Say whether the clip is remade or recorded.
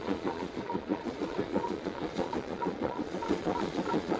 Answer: remade